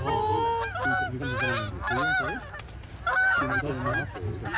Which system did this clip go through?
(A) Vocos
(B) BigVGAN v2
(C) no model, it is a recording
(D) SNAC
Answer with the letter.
C